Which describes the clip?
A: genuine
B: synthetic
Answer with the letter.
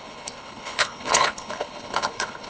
B